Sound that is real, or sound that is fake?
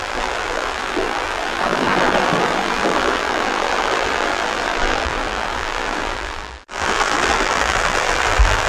fake